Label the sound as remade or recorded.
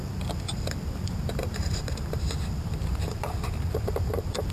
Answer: remade